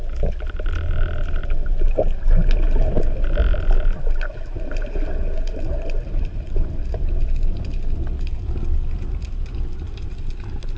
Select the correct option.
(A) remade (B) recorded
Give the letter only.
B